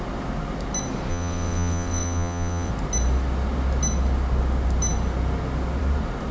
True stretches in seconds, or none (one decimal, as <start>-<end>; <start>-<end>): 0.0-1.1; 2.7-6.3

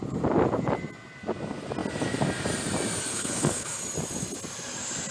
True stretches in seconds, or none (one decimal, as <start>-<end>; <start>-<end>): 0.0-3.1; 3.8-5.1

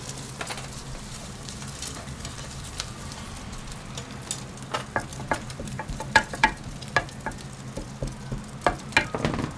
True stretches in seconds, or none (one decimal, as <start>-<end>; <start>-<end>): 0.0-0.8; 3.3-5.1; 6.6-9.6

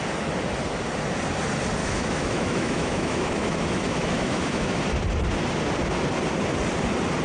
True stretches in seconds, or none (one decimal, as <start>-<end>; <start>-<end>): 0.0-1.8; 4.8-7.2